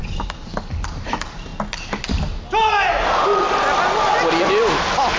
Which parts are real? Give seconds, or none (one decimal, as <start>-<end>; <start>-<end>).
0.0-5.2